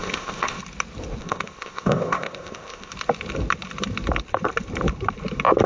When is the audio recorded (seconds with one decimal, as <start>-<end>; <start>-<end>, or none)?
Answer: 0.6-1.2; 2.9-5.7